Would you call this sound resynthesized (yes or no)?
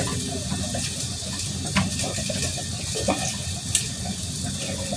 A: no